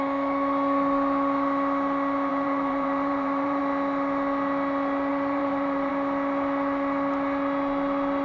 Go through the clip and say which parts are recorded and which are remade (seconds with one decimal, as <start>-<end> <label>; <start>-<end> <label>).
0.0-2.3 recorded; 2.3-3.6 remade; 3.6-5.1 recorded; 5.1-5.9 remade; 5.9-8.2 recorded